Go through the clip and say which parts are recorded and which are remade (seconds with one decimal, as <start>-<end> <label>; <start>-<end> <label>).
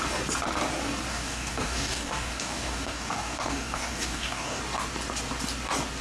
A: 0.0-1.1 recorded; 1.1-4.6 remade; 4.6-6.0 recorded